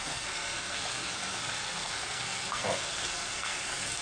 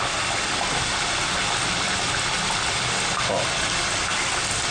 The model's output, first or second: first